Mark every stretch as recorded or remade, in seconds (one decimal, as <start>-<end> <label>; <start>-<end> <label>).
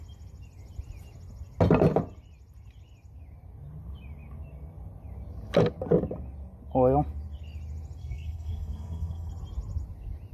0.0-8.0 recorded; 8.0-9.3 remade; 9.3-10.3 recorded